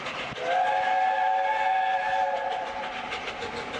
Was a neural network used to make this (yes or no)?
no